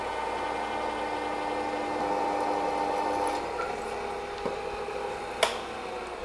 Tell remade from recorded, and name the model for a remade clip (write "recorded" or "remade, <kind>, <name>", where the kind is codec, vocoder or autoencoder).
recorded